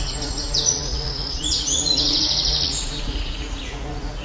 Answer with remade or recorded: remade